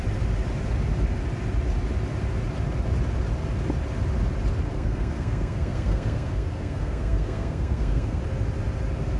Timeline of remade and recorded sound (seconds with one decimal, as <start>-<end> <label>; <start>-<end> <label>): 0.0-4.7 recorded; 4.7-8.2 remade; 8.2-9.2 recorded